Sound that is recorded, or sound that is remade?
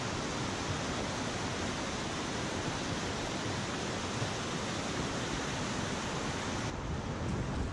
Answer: recorded